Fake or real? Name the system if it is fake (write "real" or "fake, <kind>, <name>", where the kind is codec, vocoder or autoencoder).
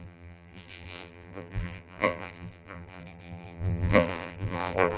fake, vocoder, BigVGAN v2